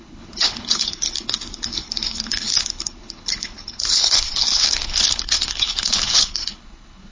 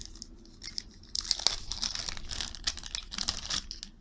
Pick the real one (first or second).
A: second